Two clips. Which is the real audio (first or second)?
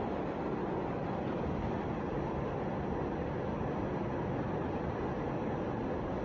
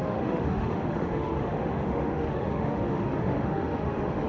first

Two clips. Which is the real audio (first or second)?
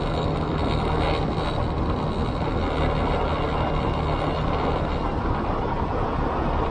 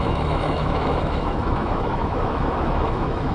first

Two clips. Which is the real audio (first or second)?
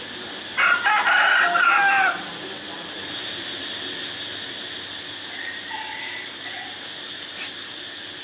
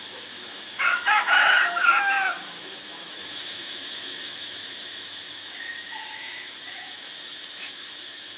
first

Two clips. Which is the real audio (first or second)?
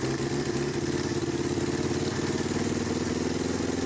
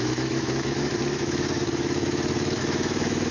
first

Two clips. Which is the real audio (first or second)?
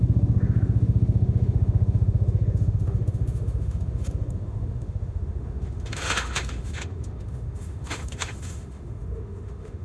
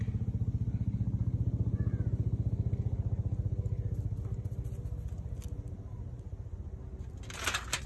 second